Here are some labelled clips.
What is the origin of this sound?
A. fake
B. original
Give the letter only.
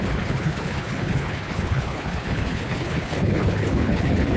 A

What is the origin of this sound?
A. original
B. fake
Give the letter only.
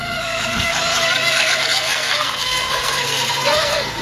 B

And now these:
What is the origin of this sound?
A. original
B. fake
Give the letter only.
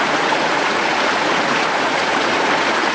B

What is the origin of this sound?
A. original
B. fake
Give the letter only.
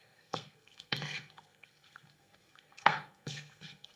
B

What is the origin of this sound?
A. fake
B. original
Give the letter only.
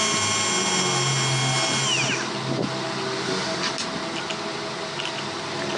B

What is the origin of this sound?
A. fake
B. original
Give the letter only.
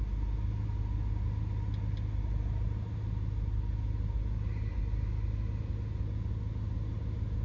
B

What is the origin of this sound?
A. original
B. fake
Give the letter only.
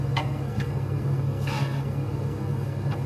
B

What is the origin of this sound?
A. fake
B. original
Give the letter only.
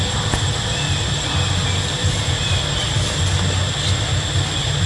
B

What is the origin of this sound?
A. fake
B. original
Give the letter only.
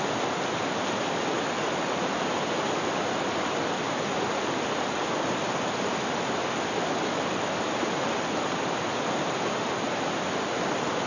B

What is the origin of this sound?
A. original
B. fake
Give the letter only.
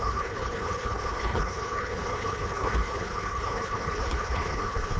B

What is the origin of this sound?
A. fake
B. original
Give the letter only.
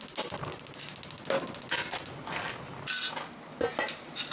B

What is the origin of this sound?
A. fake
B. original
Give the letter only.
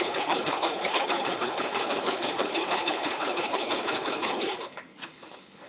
A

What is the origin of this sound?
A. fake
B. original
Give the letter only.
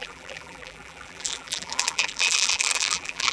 A